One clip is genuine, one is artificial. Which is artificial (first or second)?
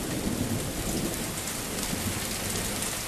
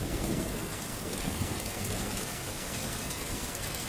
second